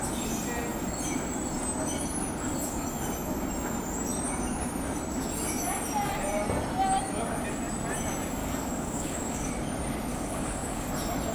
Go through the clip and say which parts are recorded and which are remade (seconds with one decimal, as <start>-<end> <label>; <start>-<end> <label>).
0.0-8.4 recorded; 8.4-9.5 remade; 9.5-10.1 recorded; 10.1-10.9 remade; 10.9-11.3 recorded